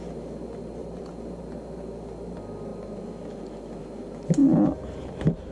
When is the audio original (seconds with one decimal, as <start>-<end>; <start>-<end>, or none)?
0.0-0.8; 1.4-5.5